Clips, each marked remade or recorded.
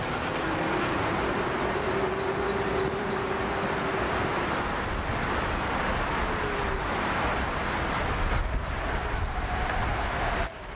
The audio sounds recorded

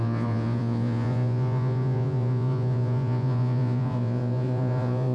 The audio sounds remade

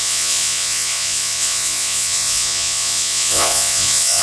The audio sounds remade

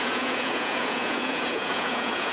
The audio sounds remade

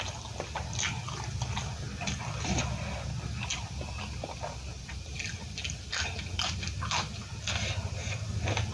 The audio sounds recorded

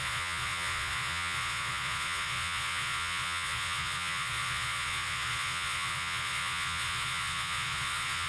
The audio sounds remade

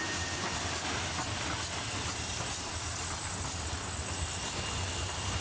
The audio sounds recorded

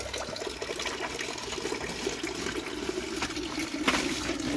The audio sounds recorded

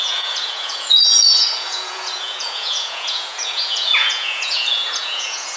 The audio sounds remade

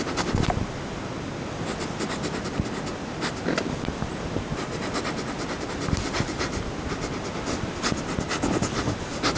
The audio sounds recorded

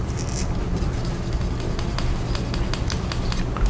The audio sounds recorded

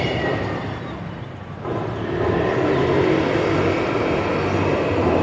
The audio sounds recorded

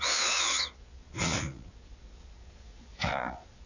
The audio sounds remade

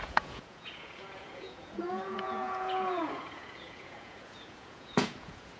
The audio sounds remade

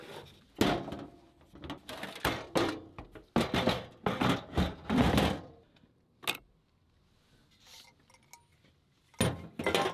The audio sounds recorded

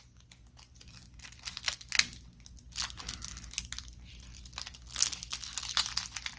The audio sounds recorded